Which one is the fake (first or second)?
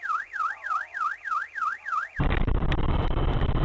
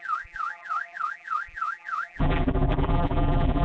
second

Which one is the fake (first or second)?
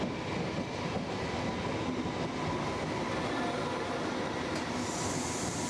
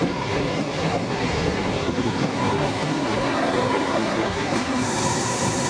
second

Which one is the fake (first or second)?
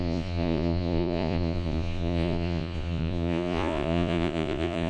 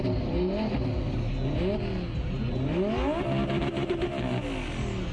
first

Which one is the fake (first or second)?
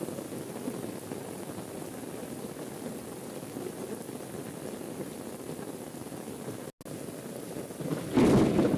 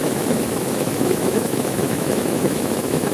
second